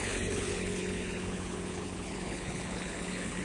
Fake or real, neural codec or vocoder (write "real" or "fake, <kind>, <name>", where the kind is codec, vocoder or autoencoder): fake, codec, HILCodec